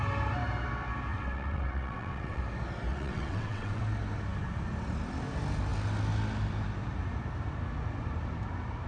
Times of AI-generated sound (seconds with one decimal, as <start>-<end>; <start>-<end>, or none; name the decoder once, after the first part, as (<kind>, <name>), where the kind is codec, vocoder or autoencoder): 1.1-2.4 (vocoder, WaveNeXt); 2.9-3.8